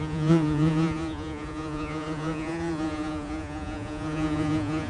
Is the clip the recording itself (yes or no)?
no